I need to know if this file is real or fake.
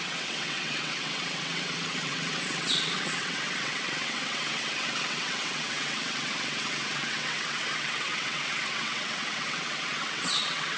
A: fake